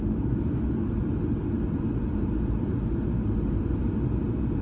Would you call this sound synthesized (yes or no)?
yes